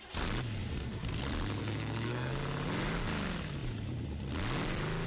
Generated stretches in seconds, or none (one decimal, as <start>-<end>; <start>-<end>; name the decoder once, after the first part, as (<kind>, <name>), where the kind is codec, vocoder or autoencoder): 0.7-1.2 (codec, SNAC); 1.6-2.4